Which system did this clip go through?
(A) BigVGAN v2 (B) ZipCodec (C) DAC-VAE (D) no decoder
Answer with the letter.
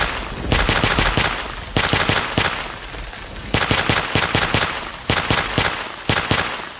D